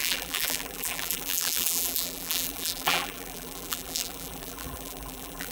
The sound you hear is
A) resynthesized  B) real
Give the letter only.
A